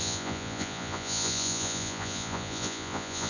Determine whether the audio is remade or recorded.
remade